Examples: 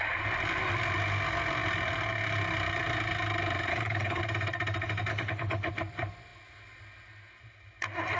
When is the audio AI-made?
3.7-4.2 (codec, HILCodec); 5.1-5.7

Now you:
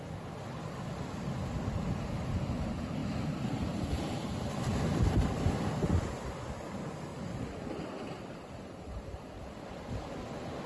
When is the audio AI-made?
none